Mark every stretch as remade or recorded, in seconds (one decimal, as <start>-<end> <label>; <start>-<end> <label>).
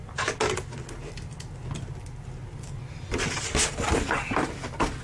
0.0-5.0 recorded